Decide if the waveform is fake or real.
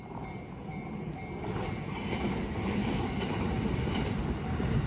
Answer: fake